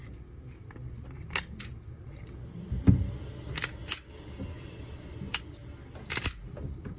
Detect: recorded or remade recorded